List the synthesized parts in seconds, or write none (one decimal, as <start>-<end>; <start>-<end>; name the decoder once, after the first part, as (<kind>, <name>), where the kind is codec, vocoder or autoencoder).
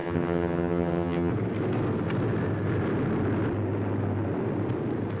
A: 0.0-1.3 (vocoder, HiFi-GAN)